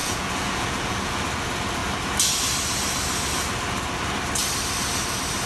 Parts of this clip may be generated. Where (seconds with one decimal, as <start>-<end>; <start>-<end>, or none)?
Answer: 0.0-1.2